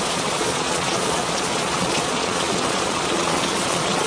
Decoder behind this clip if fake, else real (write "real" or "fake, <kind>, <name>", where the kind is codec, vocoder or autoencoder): fake, vocoder, Vocos